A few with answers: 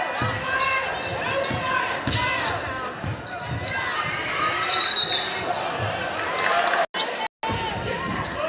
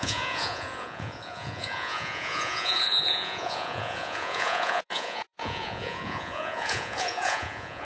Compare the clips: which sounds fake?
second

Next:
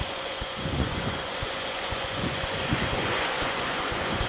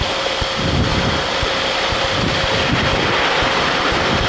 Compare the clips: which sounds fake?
first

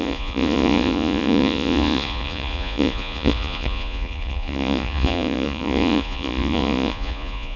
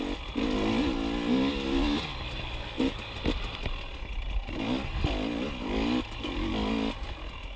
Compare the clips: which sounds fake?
first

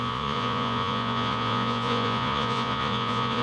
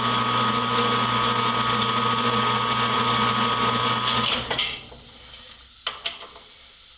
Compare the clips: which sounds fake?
first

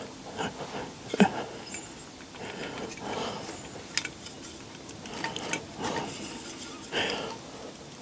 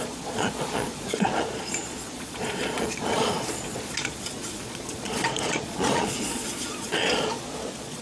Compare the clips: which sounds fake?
second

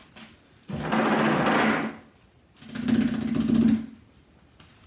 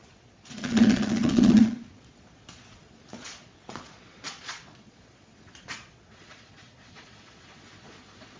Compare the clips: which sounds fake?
second